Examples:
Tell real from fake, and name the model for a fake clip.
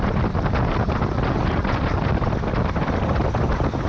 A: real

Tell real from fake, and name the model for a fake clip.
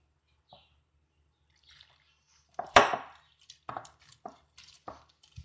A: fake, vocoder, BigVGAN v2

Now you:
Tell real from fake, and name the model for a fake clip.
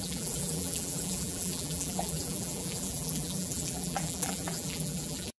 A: fake, vocoder, BigVGAN v2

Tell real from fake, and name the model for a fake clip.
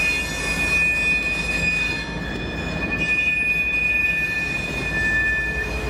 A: real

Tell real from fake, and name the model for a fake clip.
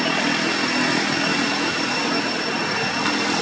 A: real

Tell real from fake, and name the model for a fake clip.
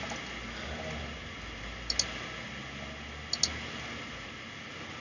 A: real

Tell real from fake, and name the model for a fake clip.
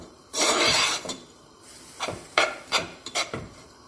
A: fake, vocoder, BigVGAN v2